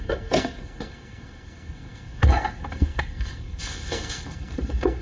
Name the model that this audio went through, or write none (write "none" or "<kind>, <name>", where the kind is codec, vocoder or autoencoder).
codec, SNAC